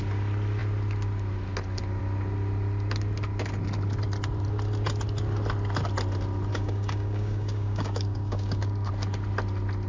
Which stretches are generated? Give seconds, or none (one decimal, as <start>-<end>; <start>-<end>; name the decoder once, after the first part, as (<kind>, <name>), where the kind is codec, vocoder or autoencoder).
6.5-8.9 (codec, DAC)